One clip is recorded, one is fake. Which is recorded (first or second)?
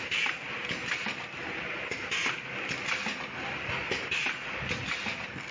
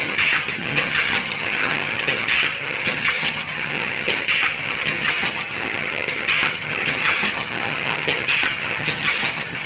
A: first